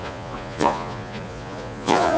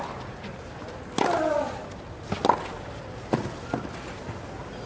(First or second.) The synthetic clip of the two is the first